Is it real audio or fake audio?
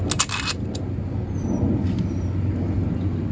real